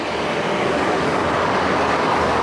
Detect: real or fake fake